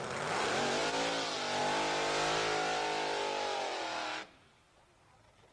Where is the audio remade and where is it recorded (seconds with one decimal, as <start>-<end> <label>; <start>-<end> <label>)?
0.0-5.5 recorded